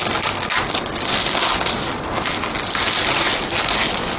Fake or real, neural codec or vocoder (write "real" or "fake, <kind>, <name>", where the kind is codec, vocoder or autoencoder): real